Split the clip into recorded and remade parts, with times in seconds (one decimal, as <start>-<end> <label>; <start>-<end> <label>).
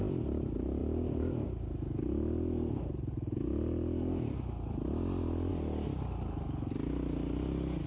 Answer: 0.0-7.9 recorded